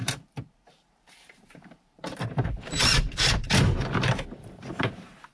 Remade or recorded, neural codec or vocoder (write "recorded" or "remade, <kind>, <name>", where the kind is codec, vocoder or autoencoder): remade, vocoder, BigVGAN v2